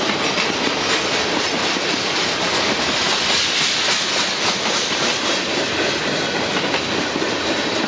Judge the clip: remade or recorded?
recorded